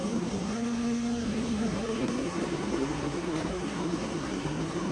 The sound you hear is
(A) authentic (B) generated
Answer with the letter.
B